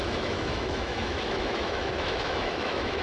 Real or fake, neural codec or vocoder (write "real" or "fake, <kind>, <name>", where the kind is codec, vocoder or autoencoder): fake, autoencoder, DAC-VAE